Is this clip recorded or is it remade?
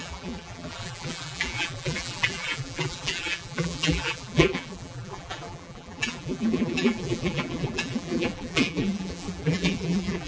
remade